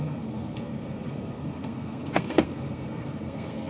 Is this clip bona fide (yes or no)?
no